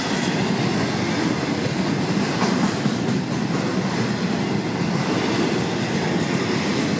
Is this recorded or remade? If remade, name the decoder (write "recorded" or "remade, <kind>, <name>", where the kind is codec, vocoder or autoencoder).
recorded